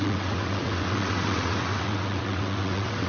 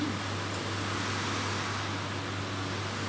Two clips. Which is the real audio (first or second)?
second